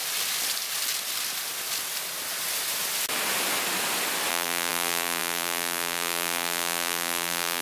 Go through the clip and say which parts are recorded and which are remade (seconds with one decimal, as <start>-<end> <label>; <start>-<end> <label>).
0.0-4.3 recorded; 4.3-7.6 remade